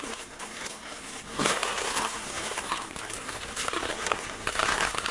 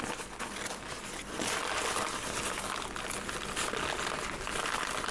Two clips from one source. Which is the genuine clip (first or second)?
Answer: second